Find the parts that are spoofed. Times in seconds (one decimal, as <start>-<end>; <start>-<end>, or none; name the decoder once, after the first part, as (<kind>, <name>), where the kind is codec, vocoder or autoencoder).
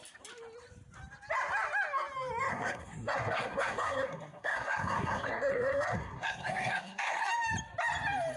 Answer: 2.5-7.3 (codec, SNAC)